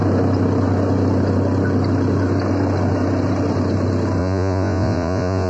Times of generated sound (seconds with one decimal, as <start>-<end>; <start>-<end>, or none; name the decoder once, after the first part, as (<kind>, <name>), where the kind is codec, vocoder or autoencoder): 4.2-5.5 (vocoder, Vocos)